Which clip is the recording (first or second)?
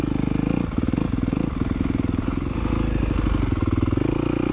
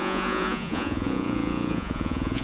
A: first